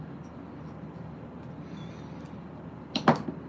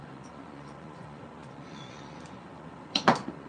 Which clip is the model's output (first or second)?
second